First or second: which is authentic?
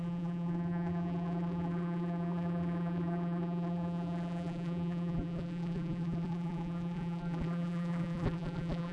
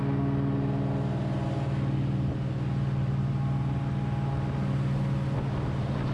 second